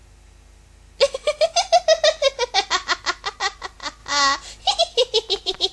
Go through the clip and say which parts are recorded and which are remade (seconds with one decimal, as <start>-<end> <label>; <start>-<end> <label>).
0.0-3.4 recorded; 3.4-4.0 remade; 4.0-4.8 recorded; 4.8-5.7 remade